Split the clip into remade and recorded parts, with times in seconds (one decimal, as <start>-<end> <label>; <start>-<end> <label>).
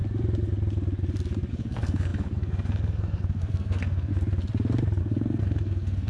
0.0-1.5 recorded; 1.5-4.1 remade; 4.1-5.0 recorded; 5.0-6.1 remade